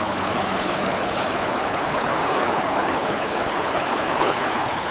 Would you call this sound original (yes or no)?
no